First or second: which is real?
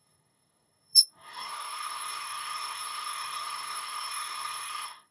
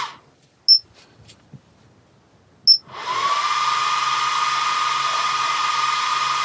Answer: second